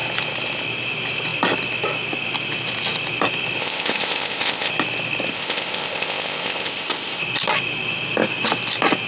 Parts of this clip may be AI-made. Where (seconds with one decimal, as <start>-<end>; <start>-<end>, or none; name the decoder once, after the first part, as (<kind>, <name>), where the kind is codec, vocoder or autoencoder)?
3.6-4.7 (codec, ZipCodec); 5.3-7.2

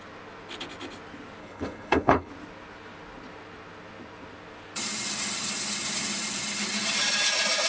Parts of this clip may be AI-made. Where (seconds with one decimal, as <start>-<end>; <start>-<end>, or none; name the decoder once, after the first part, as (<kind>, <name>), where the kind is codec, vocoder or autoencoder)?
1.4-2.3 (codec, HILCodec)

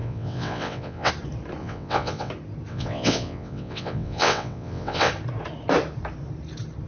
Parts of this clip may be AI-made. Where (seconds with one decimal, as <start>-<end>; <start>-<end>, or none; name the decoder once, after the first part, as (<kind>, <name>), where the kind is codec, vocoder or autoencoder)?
0.0-1.1 (vocoder, WaveNeXt); 1.6-2.3; 2.7-5.1

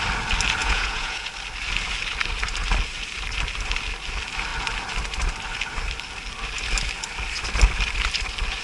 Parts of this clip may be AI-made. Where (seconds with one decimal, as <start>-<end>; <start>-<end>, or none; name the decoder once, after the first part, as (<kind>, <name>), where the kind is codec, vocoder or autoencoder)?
0.6-1.3 (vocoder, Vocos)